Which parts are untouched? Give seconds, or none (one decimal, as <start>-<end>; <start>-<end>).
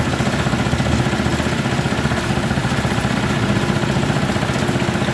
0.0-5.1